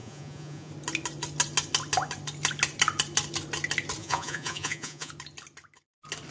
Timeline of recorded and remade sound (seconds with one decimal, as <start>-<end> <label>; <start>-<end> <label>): 0.0-0.7 remade; 0.7-4.0 recorded; 4.0-5.1 remade; 5.1-6.3 recorded